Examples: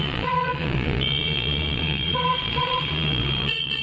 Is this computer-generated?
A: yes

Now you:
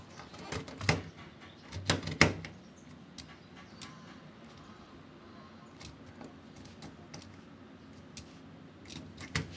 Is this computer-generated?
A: no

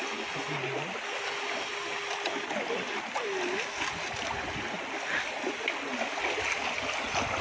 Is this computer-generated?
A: no